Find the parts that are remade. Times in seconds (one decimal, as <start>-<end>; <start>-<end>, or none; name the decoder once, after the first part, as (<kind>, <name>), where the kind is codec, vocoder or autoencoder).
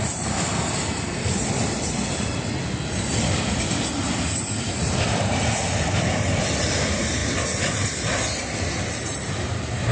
0.0-1.6 (vocoder, BigVGAN v2); 3.9-5.6; 6.6-9.9